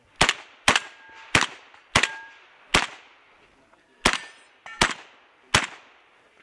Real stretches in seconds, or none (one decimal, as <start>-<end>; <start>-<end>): 2.7-5.9